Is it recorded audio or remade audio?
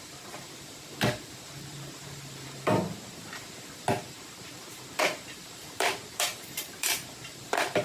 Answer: remade